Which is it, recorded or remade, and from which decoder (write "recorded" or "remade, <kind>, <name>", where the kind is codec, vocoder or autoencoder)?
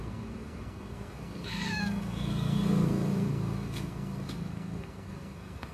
remade, codec, SNAC